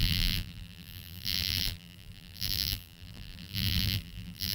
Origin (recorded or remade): remade